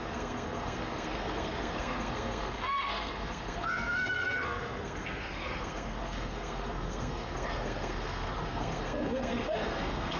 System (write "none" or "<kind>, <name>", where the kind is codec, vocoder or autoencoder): codec, SNAC